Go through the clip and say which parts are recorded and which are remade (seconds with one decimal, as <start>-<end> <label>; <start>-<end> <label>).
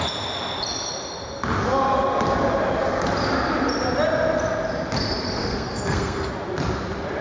0.0-5.4 recorded; 5.4-6.3 remade; 6.3-7.2 recorded